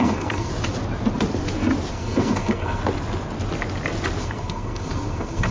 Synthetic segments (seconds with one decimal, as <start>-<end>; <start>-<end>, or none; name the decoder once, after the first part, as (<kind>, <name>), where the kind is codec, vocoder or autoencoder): 0.0-0.5 (codec, SNAC); 1.9-2.8; 4.2-5.5